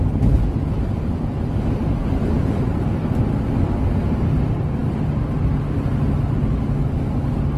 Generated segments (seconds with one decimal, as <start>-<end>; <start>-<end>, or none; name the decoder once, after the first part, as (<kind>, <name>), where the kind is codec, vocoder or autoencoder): 2.0-2.8 (vocoder, BigVGAN v2)